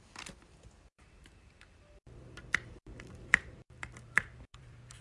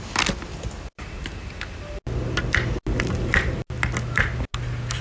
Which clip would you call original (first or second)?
second